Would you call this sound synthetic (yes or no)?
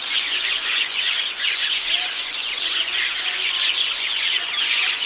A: yes